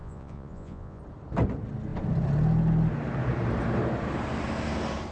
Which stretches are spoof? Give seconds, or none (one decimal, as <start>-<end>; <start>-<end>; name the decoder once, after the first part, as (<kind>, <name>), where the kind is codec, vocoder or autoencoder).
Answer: 0.0-1.0 (vocoder, Vocos)